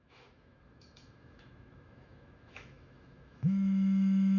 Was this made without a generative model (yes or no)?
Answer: no